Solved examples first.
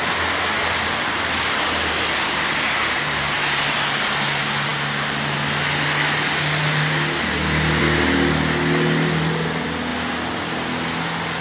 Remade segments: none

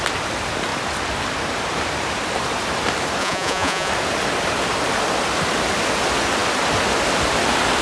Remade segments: 3.2-3.9 (vocoder, Vocos)

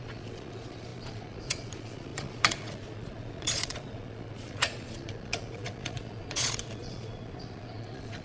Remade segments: 0.0-8.2 (vocoder, Vocos)

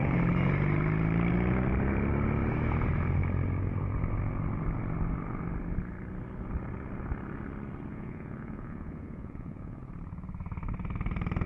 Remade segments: 7.9-9.8 (vocoder, Vocos)

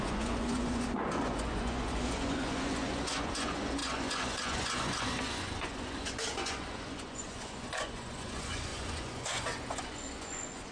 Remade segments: 0.0-10.7 (vocoder, Vocos)